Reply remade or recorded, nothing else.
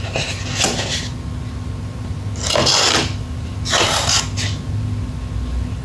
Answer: recorded